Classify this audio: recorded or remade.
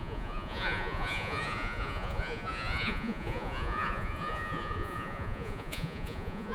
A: remade